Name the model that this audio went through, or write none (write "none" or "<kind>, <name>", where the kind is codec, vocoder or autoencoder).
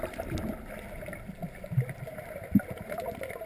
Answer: vocoder, BigVGAN v2